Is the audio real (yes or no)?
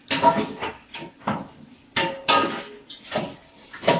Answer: yes